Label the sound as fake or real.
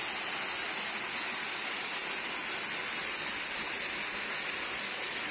real